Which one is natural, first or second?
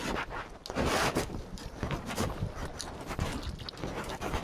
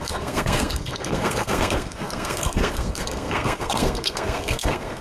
first